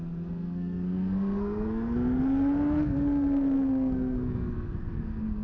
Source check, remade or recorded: remade